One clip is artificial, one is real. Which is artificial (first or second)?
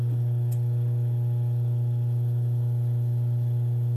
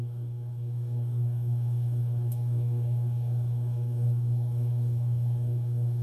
second